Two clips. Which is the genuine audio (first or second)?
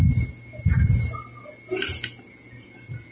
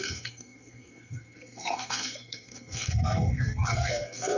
first